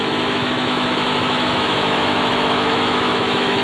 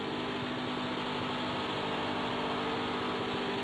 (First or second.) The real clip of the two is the second